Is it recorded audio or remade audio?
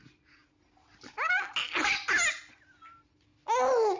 recorded